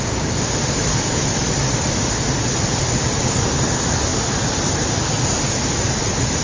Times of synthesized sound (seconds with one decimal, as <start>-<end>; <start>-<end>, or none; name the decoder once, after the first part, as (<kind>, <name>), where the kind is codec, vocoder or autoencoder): none